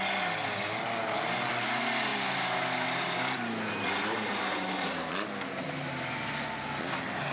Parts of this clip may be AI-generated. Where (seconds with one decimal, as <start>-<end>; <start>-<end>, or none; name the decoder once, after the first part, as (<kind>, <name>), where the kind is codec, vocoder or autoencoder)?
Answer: none